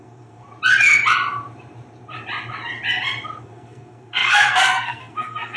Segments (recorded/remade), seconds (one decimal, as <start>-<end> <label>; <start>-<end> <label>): 0.0-0.5 remade; 0.5-3.4 recorded; 3.4-5.6 remade